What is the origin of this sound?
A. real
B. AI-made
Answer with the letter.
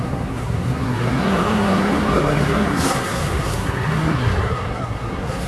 B